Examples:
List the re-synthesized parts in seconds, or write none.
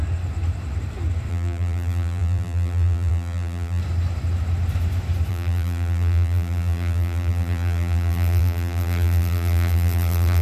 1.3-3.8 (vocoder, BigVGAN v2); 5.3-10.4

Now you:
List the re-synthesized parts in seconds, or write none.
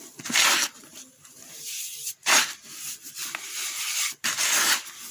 0.9-1.9 (vocoder, BigVGAN v2)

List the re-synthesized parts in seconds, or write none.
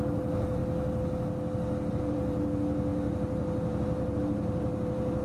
0.0-0.6 (vocoder, BigVGAN v2); 1.9-5.2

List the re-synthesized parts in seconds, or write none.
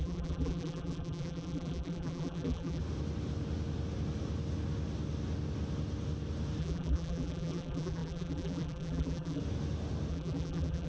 0.0-2.8 (vocoder, BigVGAN v2); 6.6-9.4; 10.1-10.9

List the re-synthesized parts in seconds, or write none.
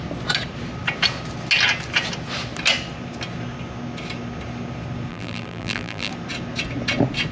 5.1-6.1 (vocoder, BigVGAN v2)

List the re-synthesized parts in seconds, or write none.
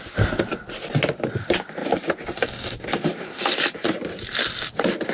1.8-2.5 (vocoder, BigVGAN v2); 3.1-4.3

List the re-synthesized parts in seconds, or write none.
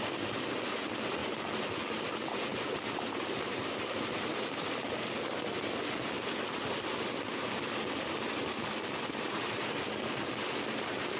2.5-3.9 (vocoder, BigVGAN v2)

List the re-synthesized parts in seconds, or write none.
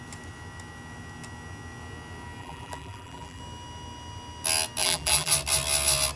2.4-3.4 (vocoder, BigVGAN v2); 4.8-5.3